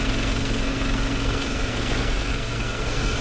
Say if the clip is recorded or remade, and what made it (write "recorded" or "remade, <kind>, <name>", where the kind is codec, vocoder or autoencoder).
remade, codec, SNAC